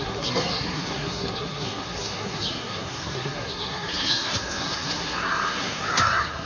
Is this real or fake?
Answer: fake